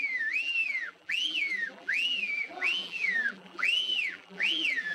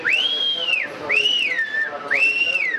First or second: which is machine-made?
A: first